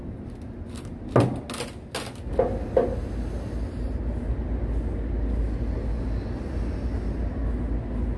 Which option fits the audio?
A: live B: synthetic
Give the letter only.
A